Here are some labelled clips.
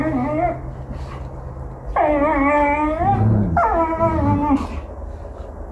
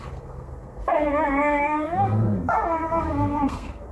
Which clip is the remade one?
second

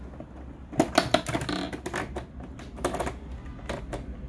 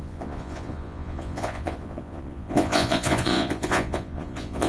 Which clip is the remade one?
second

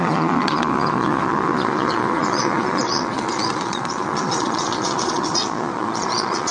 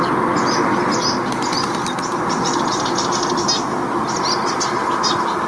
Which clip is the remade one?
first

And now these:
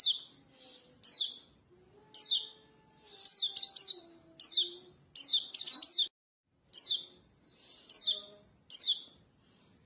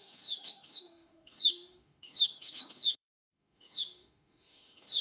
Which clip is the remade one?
second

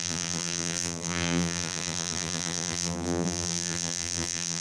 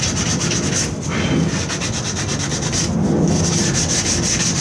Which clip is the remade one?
first